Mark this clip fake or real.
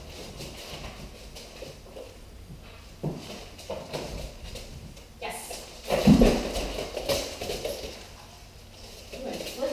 real